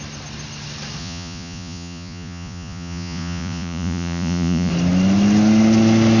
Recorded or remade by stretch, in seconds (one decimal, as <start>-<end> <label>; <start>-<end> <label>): 0.0-1.0 recorded; 1.0-4.7 remade; 4.7-6.2 recorded